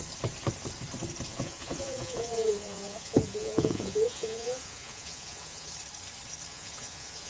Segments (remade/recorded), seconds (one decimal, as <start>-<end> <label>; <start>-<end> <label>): 0.0-1.3 recorded; 1.3-5.7 remade; 5.7-6.5 recorded; 6.5-7.3 remade